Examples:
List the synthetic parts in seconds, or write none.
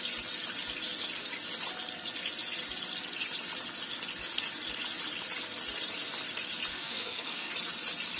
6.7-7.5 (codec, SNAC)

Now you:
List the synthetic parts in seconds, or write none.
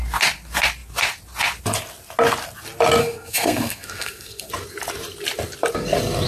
3.0-4.5 (codec, SNAC)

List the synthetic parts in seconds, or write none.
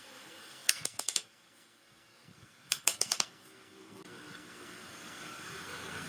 0.0-6.1 (codec, SNAC)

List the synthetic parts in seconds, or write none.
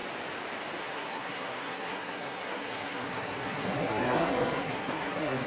0.8-5.5 (codec, SNAC)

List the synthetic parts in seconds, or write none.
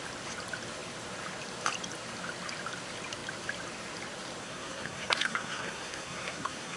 4.4-6.8 (codec, SNAC)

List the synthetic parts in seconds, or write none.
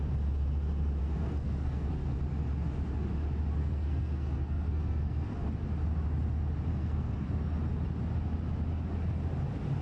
1.0-1.9 (codec, SNAC); 3.6-5.5; 6.7-7.3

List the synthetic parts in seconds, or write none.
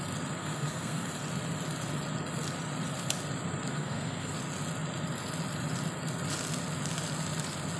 0.4-1.1 (codec, SNAC); 3.7-4.3